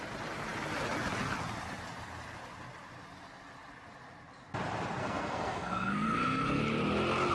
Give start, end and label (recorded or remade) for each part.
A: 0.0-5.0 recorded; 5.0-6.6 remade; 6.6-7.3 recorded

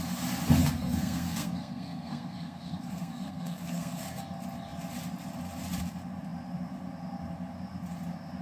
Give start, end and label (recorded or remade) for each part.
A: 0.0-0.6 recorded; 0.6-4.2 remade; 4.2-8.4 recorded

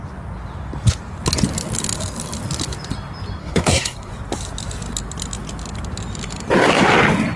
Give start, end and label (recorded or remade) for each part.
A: 0.0-3.4 recorded; 3.4-4.1 remade; 4.1-7.4 recorded

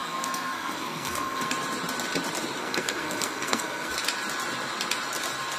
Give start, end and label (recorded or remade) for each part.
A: 0.0-1.5 remade; 1.5-2.6 recorded; 2.6-3.9 remade; 3.9-5.6 recorded

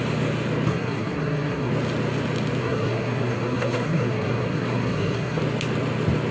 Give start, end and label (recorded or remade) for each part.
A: 0.0-0.7 recorded; 0.7-1.7 remade; 1.7-2.6 recorded; 2.6-5.4 remade; 5.4-6.3 recorded